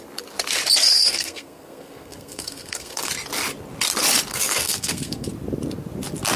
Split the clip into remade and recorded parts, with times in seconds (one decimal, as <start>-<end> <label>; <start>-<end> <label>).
0.0-0.9 recorded; 0.9-3.1 remade; 3.1-4.3 recorded; 4.3-5.3 remade; 5.3-6.4 recorded